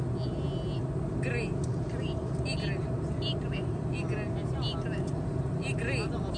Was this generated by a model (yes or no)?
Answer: no